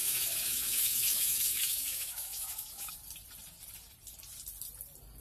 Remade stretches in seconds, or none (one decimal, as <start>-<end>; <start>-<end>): 0.0-2.9